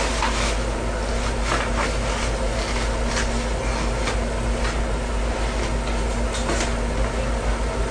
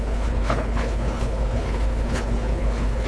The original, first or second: first